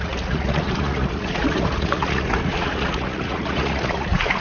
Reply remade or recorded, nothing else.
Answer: remade